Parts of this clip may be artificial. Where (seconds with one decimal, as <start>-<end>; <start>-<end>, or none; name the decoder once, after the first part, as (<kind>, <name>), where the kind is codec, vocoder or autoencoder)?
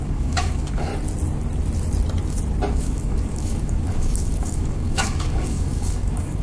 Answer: 0.0-0.9 (codec, DAC); 2.7-6.4